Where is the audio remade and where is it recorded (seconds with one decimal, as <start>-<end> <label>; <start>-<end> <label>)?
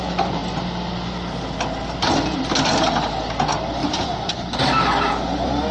0.0-3.8 recorded; 3.8-4.3 remade; 4.3-5.7 recorded